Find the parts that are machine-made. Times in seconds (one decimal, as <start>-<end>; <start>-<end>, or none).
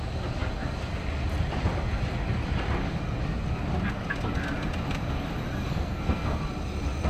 5.7-6.4